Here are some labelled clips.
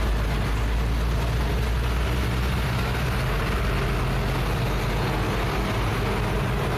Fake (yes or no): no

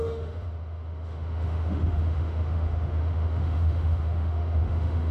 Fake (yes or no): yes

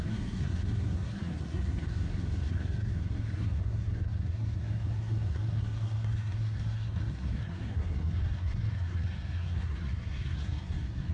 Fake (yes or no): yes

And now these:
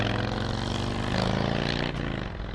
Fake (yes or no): no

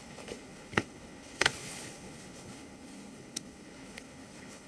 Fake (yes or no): yes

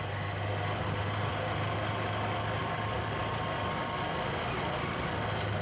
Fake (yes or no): no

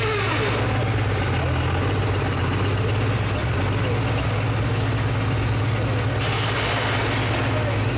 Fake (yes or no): no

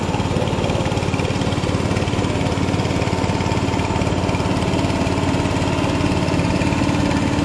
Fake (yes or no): no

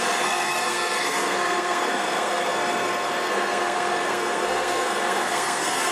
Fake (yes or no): yes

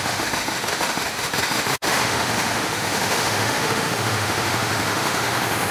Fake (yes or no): yes